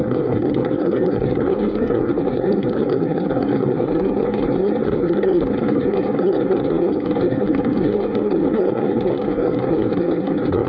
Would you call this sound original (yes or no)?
no